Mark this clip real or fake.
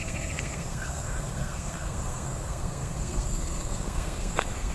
fake